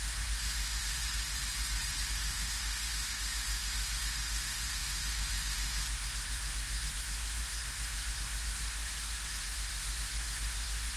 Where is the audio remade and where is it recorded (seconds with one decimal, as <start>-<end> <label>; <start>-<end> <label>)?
0.0-1.0 remade; 1.0-2.2 recorded; 2.2-11.0 remade